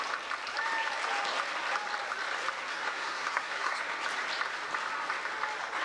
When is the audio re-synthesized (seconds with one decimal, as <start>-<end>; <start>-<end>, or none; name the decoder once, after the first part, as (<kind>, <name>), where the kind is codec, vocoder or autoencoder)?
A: 2.7-3.8 (codec, SNAC)